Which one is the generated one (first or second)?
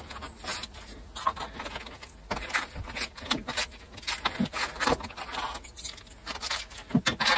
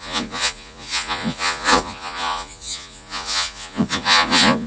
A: second